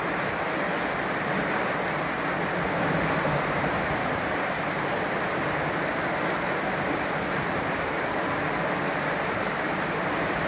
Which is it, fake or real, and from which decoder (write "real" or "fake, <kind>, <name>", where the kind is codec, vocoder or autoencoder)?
real